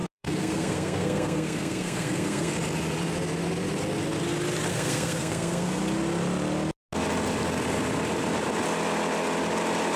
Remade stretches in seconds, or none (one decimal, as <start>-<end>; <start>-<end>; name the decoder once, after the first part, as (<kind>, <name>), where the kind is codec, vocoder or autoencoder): 0.0-2.5 (codec, SNAC); 4.7-5.8